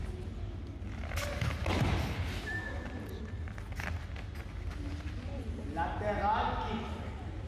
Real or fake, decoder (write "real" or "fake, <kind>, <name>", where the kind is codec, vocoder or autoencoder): real